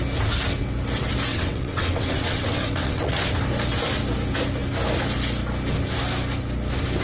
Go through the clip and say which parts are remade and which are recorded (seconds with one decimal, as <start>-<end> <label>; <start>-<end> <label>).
0.0-1.3 recorded; 1.3-3.2 remade; 3.2-7.0 recorded